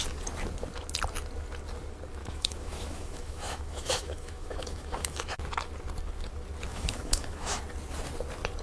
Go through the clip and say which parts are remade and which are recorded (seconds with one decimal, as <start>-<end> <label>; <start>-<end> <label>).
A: 0.0-2.2 recorded; 2.2-5.4 remade; 5.4-6.7 recorded; 6.7-7.6 remade; 7.6-8.6 recorded